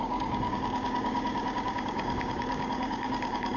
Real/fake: fake